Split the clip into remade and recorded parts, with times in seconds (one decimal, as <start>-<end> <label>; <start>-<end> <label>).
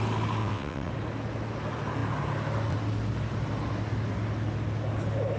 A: 0.0-0.4 recorded; 0.4-0.9 remade; 0.9-5.4 recorded